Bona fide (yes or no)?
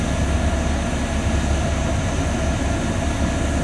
yes